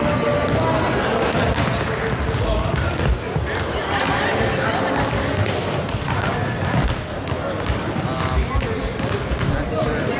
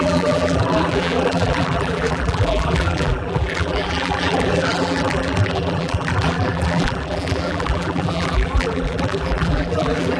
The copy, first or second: second